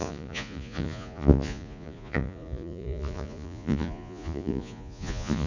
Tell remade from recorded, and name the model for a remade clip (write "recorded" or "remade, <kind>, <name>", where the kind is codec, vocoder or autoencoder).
remade, vocoder, Vocos